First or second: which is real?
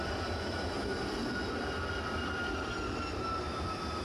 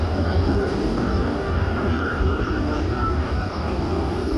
first